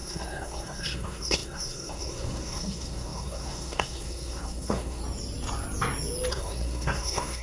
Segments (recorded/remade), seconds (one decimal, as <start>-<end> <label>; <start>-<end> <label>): 0.0-5.0 remade; 5.0-6.3 recorded; 6.3-7.4 remade